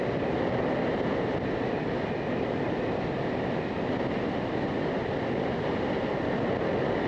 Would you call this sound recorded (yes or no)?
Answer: yes